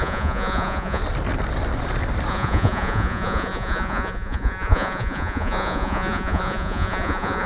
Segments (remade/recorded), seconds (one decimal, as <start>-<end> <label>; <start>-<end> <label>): 0.0-1.0 remade; 1.0-2.3 recorded; 2.3-7.5 remade